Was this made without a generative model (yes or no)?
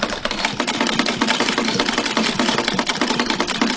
yes